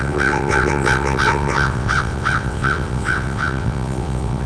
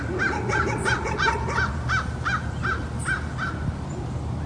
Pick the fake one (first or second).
first